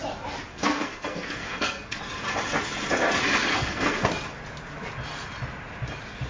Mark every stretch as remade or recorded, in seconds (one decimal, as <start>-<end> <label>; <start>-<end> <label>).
0.0-0.5 recorded; 0.5-2.0 remade; 2.0-3.5 recorded; 3.5-4.1 remade; 4.1-6.3 recorded